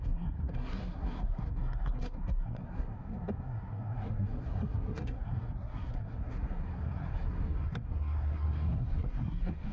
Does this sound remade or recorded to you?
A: remade